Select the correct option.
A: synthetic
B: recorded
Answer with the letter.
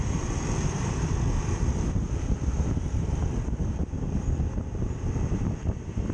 A